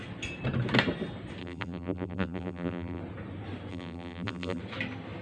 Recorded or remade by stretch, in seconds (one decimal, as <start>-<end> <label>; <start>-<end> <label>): 0.0-1.4 recorded; 1.4-3.0 remade; 3.0-3.7 recorded; 3.7-4.6 remade; 4.6-5.2 recorded